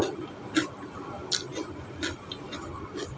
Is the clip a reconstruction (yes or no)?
no